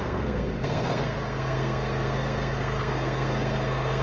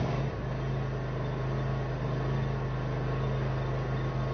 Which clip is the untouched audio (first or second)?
second